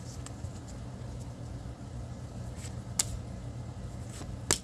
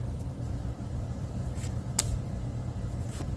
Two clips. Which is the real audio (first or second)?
first